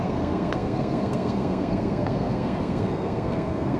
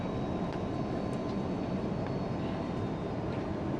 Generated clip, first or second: first